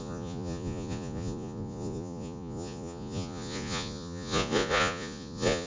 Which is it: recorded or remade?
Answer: remade